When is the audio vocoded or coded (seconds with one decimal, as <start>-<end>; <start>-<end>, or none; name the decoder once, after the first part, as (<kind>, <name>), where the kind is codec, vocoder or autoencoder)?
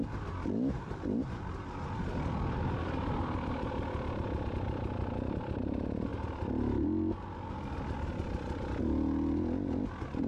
none